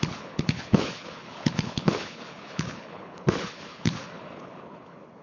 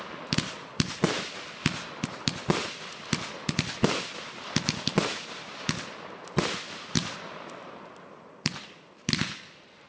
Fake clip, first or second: first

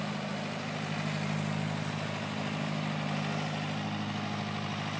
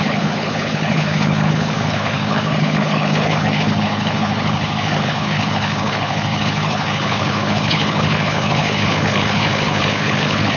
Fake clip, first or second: second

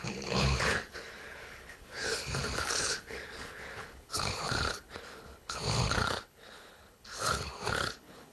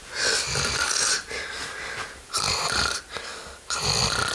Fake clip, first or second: first